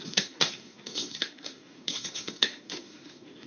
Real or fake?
fake